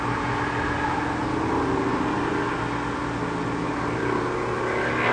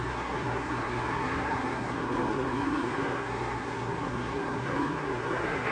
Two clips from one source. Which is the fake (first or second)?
second